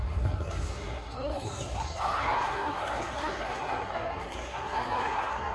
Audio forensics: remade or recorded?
remade